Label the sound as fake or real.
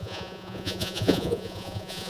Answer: fake